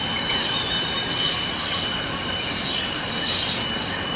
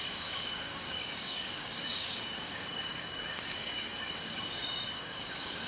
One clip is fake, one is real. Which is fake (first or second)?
second